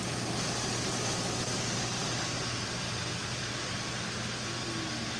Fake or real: real